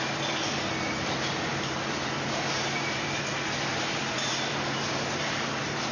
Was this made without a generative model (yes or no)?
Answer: no